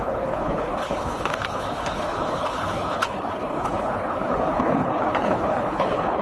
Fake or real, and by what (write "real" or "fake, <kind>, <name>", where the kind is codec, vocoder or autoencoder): fake, codec, HILCodec